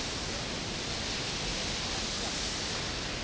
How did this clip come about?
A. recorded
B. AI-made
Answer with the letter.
A